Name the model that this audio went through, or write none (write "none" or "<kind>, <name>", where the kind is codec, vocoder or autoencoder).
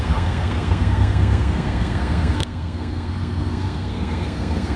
codec, SNAC